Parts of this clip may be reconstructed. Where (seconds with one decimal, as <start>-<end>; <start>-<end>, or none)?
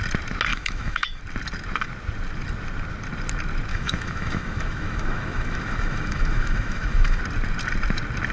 0.5-1.2; 3.7-7.2